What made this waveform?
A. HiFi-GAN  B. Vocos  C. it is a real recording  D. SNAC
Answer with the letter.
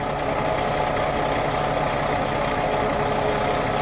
C